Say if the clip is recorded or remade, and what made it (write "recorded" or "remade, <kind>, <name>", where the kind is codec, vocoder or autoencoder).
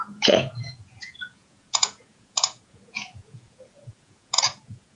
remade, vocoder, Vocos